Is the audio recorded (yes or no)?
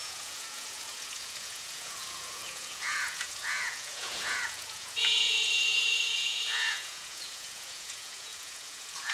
no